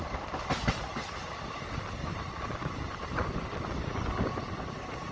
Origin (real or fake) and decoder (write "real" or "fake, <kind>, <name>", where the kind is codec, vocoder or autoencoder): real